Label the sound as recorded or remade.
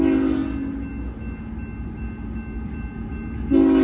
recorded